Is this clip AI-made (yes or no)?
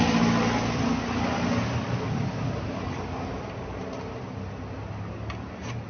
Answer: no